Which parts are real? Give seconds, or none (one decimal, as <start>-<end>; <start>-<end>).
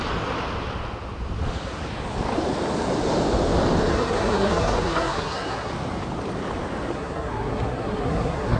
0.0-3.9; 5.7-6.9